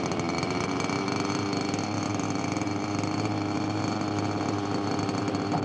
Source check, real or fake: real